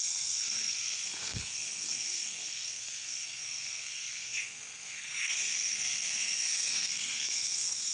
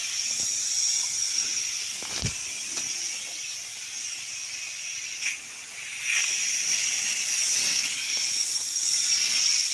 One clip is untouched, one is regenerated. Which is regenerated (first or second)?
first